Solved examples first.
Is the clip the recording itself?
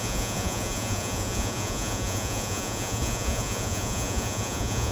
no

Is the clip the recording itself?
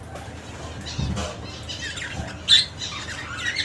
yes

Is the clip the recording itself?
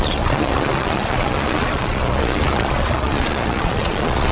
no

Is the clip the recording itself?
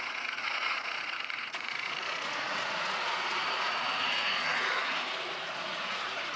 no